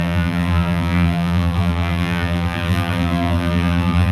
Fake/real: fake